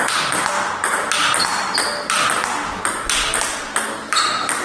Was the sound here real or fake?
real